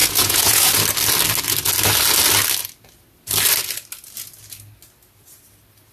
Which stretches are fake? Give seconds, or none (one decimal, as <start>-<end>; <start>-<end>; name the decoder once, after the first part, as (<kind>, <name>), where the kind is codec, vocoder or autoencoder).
0.0-0.7 (vocoder, Vocos)